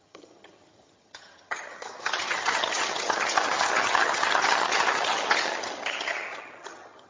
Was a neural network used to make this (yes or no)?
yes